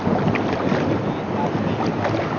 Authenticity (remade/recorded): recorded